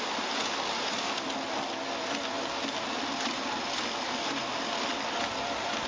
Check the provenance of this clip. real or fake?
real